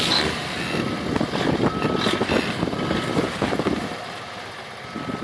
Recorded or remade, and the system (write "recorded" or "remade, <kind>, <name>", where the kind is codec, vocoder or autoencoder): recorded